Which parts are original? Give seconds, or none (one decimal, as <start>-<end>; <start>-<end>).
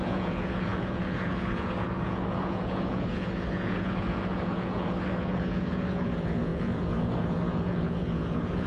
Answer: none